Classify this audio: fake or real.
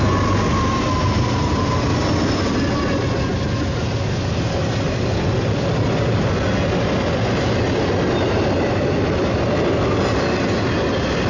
real